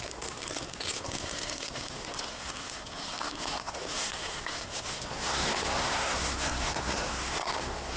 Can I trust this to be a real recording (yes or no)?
no